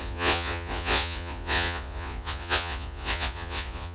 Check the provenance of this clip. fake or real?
fake